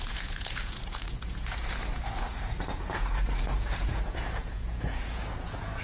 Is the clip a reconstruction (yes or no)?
yes